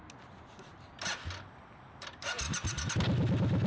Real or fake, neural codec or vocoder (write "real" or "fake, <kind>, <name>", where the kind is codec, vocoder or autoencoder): real